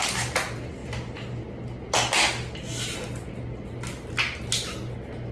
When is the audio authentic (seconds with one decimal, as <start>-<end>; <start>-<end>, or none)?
0.0-5.3